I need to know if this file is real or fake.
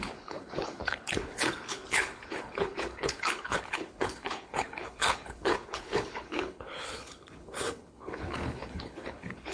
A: fake